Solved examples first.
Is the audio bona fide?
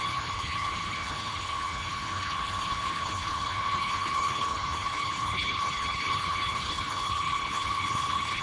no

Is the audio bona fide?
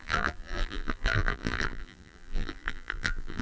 no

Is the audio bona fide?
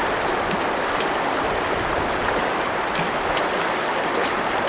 yes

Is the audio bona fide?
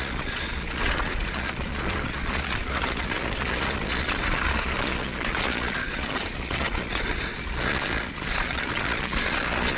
no